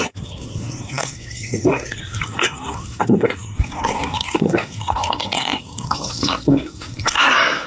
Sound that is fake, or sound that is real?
fake